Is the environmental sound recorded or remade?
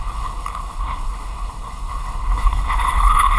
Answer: remade